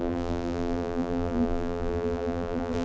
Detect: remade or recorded remade